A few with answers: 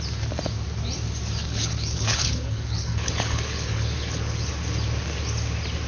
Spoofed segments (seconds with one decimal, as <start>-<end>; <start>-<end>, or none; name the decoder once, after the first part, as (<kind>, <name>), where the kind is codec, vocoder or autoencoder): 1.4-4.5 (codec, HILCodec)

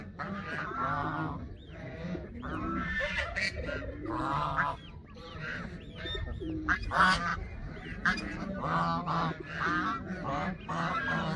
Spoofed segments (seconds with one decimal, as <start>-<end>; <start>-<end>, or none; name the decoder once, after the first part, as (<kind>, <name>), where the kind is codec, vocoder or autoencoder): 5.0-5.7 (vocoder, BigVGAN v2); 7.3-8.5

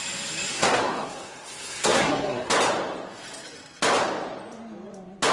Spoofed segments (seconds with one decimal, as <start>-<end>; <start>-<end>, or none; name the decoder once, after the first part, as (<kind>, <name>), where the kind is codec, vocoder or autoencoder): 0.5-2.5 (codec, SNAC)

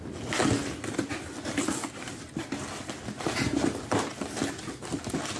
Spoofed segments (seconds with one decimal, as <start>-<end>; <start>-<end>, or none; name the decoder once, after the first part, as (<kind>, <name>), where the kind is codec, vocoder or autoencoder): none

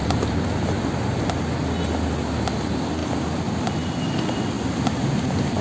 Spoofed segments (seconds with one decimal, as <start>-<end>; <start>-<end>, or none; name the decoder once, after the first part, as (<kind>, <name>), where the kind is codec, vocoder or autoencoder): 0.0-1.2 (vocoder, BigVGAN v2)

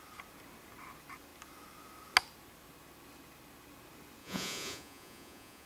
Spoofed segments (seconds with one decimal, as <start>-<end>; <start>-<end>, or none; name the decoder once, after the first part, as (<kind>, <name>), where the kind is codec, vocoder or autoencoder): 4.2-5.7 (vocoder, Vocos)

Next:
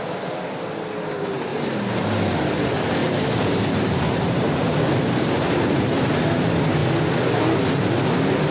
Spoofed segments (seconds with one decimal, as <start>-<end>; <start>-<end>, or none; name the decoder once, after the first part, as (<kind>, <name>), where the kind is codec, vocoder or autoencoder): 1.5-2.4 (vocoder, BigVGAN v2); 3.0-6.2